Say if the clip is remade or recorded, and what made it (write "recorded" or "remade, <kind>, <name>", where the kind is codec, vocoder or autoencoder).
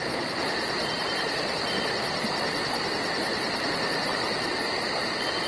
recorded